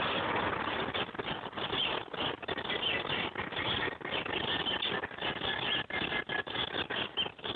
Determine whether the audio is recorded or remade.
recorded